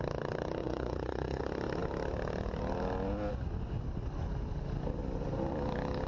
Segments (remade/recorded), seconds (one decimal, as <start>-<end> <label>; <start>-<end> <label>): 0.0-0.6 recorded; 0.6-1.4 remade; 1.4-6.1 recorded